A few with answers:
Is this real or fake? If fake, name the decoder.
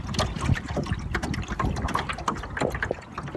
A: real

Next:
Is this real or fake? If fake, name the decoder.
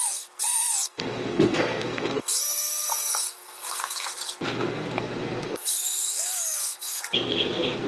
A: fake, codec, SNAC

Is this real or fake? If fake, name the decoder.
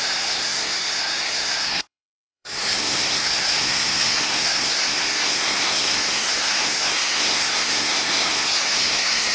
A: fake, codec, SNAC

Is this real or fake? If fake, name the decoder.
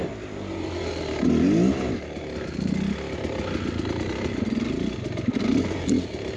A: real